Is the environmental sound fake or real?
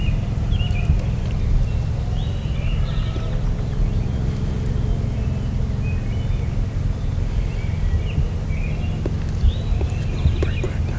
real